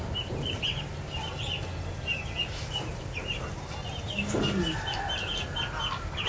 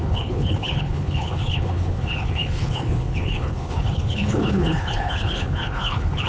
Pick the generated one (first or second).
second